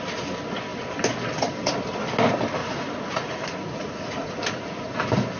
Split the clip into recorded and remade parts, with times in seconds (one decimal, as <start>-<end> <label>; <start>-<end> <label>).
0.0-2.6 recorded; 2.6-4.9 remade; 4.9-5.4 recorded